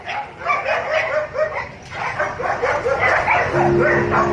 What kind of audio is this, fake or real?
real